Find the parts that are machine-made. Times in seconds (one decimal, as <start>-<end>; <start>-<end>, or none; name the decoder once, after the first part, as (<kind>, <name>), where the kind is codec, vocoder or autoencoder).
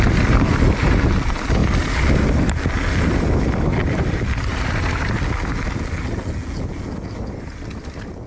0.0-1.6 (vocoder, BigVGAN v2); 3.4-4.5; 7.1-8.3